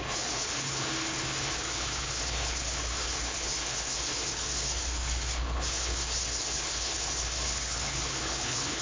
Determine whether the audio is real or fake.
fake